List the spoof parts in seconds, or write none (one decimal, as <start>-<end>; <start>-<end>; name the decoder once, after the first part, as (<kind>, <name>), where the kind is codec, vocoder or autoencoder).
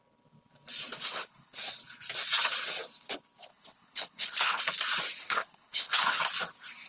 0.9-1.6 (codec, HILCodec); 3.5-4.6; 5.2-6.2